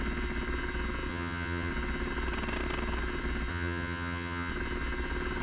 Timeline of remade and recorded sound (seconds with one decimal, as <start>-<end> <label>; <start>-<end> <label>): 0.0-1.1 recorded; 1.1-1.7 remade; 1.7-3.5 recorded; 3.5-4.5 remade; 4.5-5.4 recorded